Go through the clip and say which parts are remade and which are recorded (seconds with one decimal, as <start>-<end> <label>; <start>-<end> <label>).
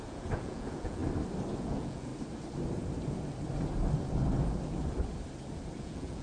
0.0-1.0 remade; 1.0-1.6 recorded; 1.6-2.1 remade; 2.1-5.8 recorded; 5.8-6.2 remade